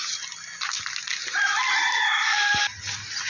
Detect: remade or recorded recorded